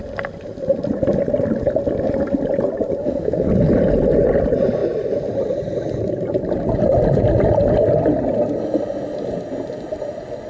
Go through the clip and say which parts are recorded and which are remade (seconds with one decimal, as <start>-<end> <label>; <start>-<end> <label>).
0.0-3.0 recorded; 3.0-3.5 remade; 3.5-10.5 recorded